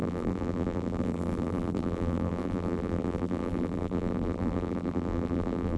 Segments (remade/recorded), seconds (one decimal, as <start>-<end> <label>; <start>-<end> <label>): 0.0-5.8 remade